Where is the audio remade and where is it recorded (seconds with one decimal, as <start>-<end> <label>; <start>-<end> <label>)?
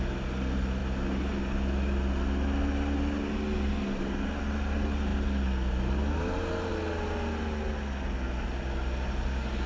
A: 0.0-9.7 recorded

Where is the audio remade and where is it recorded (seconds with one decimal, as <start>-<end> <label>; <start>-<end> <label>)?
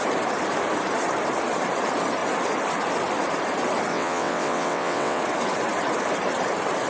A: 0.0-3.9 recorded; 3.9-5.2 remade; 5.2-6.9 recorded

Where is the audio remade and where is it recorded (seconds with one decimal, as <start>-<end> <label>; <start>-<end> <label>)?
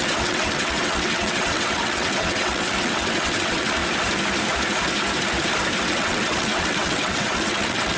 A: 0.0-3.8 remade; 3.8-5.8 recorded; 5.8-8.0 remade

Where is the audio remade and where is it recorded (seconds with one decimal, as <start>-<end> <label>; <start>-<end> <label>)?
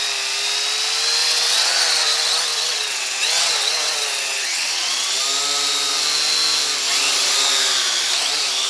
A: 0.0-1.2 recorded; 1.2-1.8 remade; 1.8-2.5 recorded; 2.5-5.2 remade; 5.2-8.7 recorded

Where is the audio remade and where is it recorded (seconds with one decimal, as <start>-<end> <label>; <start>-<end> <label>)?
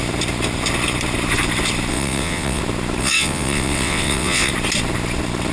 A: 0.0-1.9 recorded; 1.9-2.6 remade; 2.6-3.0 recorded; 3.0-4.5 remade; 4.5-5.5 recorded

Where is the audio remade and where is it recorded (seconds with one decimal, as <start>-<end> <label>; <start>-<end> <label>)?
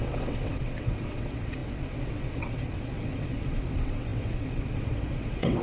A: 0.0-5.6 remade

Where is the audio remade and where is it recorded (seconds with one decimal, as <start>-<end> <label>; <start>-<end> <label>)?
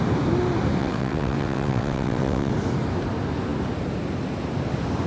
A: 0.0-0.8 recorded; 0.8-2.5 remade; 2.5-5.1 recorded